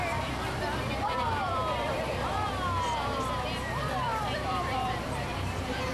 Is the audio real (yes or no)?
no